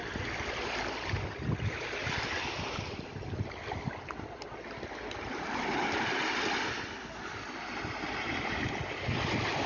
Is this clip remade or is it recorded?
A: recorded